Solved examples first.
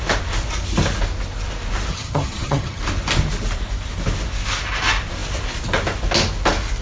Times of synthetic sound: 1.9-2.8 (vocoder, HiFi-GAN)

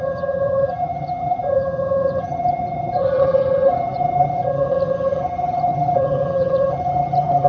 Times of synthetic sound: 0.0-7.5 (vocoder, HiFi-GAN)

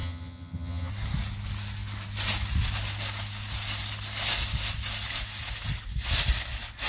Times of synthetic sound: 0.0-0.9 (vocoder, HiFi-GAN)

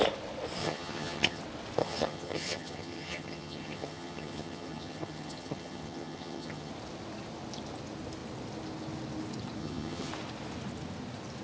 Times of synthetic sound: 0.6-1.4 (vocoder, HiFi-GAN); 1.8-6.7; 9.6-10.1

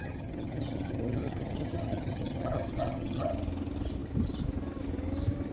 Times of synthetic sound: 0.0-3.3 (vocoder, HiFi-GAN)

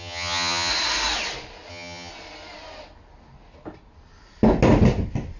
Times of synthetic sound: 0.0-0.7 (vocoder, HiFi-GAN); 1.7-2.1

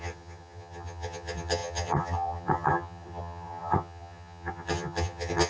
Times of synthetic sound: 0.0-5.5 (vocoder, HiFi-GAN)